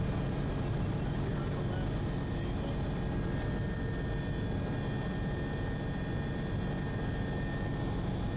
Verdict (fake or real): real